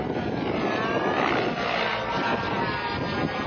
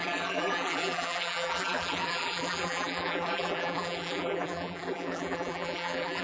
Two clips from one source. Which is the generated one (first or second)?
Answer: second